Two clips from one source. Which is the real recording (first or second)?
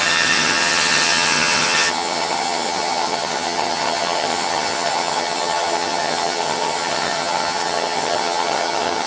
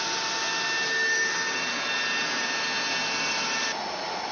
second